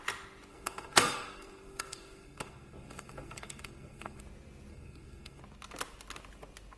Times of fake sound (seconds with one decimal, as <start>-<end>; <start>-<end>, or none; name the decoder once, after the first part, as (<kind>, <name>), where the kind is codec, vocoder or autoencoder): 0.5-4.2 (codec, SNAC); 4.7-5.4